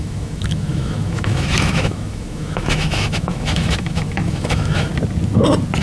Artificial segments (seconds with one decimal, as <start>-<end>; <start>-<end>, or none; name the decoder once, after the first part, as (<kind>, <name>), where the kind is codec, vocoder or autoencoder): 0.0-4.9 (autoencoder, DAC-VAE)